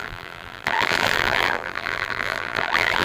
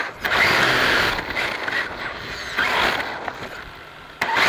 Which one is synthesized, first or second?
first